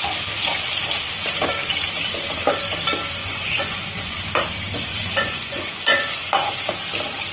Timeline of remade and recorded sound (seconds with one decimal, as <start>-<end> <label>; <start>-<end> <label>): 0.0-3.2 recorded; 3.2-4.3 remade; 4.3-4.9 recorded; 4.9-6.7 remade; 6.7-7.3 recorded